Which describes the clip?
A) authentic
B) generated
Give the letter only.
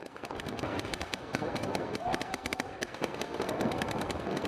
B